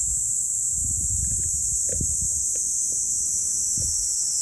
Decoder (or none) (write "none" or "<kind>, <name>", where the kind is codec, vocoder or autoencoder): none